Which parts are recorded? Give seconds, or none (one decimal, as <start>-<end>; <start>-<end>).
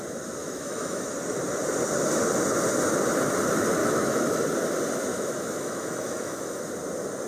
0.0-0.4; 1.1-3.8; 4.4-5.1; 6.7-7.3